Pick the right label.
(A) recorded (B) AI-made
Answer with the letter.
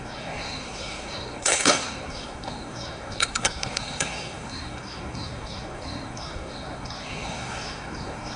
B